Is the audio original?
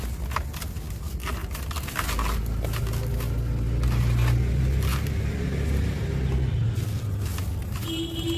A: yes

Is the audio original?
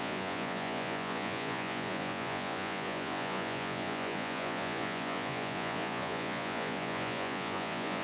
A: no